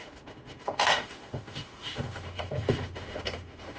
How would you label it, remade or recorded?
remade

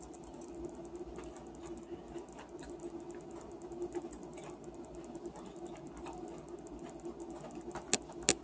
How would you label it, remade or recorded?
recorded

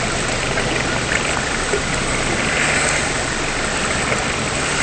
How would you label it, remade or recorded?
recorded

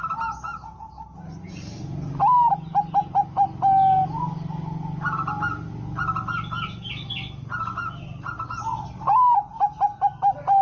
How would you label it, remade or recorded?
recorded